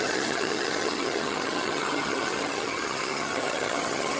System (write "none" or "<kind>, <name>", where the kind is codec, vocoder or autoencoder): vocoder, HiFi-GAN